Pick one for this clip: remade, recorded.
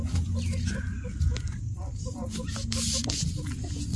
recorded